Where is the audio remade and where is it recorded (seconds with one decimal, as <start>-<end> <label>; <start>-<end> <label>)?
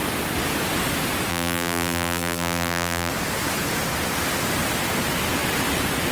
0.0-1.3 recorded; 1.3-3.1 remade; 3.1-6.1 recorded